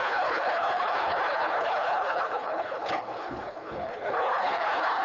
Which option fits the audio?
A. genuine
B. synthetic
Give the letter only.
B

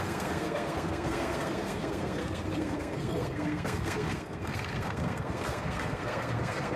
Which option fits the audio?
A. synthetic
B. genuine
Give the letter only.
A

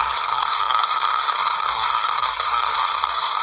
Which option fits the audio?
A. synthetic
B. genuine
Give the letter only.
A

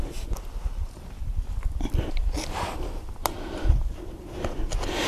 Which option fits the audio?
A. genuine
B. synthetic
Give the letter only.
A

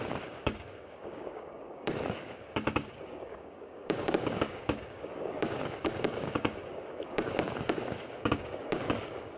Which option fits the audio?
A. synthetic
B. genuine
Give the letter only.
A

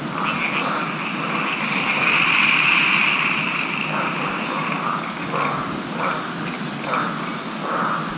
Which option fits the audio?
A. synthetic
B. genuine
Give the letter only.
B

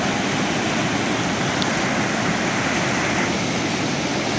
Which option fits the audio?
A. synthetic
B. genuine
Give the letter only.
B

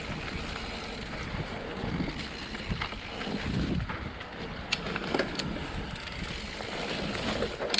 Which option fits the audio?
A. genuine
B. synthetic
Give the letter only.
A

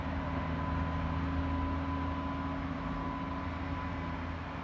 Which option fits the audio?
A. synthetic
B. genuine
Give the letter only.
B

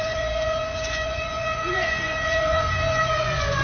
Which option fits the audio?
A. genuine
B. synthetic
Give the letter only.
B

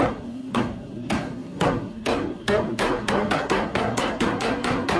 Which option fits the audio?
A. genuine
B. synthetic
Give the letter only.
B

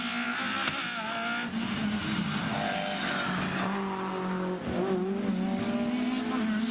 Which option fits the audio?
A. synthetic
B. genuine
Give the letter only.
B